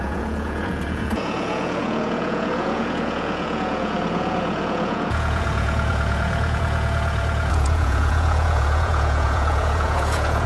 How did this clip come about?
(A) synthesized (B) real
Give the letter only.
A